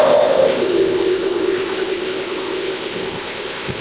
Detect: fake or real fake